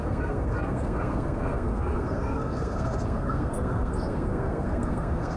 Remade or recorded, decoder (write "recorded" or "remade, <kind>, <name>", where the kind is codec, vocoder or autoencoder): remade, codec, SNAC